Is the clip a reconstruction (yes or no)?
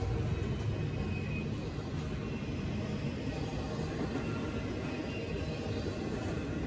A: no